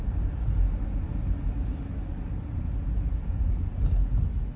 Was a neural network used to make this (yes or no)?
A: no